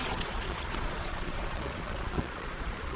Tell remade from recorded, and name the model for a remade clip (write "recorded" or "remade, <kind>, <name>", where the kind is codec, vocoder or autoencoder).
remade, vocoder, Vocos